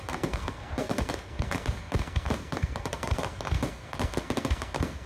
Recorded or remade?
remade